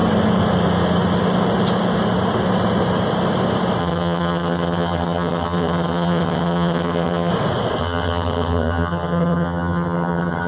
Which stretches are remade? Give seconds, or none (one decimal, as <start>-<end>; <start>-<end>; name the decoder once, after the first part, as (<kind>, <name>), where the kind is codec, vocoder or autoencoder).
3.8-7.3 (vocoder, HiFi-GAN); 7.8-10.5